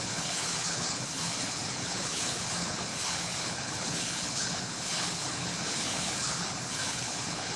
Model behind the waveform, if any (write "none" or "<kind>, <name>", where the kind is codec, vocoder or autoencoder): codec, HILCodec